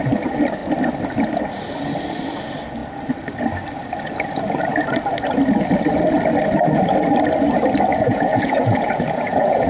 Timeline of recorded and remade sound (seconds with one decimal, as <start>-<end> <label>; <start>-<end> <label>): 0.0-7.9 recorded; 7.9-9.7 remade